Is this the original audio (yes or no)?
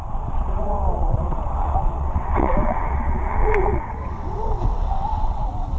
no